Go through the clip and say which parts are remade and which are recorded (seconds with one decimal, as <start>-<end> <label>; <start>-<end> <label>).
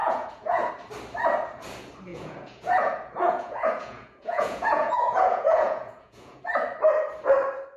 0.0-0.7 remade; 0.7-2.1 recorded; 2.1-6.4 remade; 6.4-7.8 recorded